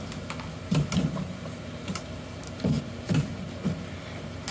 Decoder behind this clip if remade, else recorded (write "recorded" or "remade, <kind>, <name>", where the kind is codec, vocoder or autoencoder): recorded